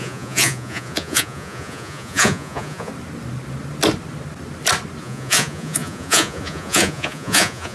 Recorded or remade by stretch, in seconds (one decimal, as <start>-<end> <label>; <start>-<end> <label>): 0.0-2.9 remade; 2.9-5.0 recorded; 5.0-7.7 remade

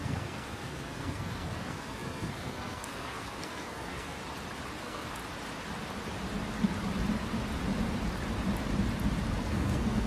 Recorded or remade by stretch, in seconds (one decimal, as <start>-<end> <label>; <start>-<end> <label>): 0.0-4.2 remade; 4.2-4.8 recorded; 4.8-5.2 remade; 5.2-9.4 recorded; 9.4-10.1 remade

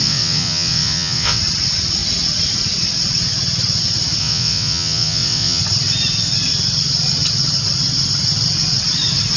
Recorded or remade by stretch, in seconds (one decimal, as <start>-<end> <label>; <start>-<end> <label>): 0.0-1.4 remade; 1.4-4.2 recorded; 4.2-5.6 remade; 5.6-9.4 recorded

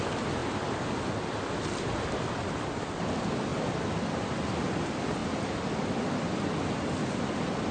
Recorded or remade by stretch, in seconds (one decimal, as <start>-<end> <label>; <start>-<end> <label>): 0.0-0.4 remade; 0.4-1.5 recorded; 1.5-3.5 remade; 3.5-4.5 recorded; 4.5-7.7 remade